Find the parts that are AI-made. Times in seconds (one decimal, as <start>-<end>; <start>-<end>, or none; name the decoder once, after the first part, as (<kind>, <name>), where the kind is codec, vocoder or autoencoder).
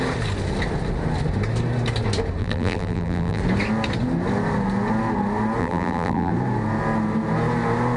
2.4-3.4 (vocoder, BigVGAN v2); 5.6-6.3